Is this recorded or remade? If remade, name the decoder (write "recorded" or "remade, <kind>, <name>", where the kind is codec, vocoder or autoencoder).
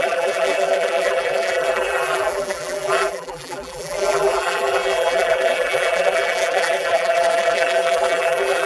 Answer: remade, vocoder, BigVGAN v2